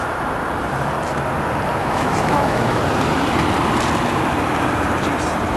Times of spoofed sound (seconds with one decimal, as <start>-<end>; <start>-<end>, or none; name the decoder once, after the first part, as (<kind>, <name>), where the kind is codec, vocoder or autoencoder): 1.8-2.8 (autoencoder, DAC-VAE)